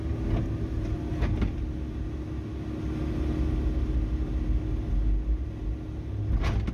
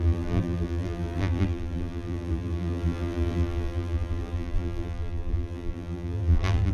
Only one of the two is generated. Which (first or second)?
second